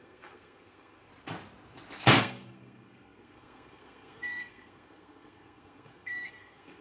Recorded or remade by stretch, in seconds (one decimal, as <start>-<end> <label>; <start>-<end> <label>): 0.0-1.1 remade; 1.1-2.2 recorded; 2.2-6.8 remade